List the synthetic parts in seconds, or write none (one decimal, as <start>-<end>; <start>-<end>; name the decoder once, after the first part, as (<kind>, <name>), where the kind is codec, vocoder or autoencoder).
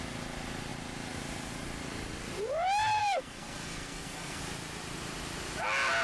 3.0-4.4 (codec, SNAC)